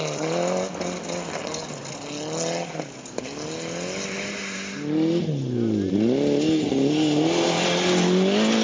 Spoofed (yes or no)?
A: no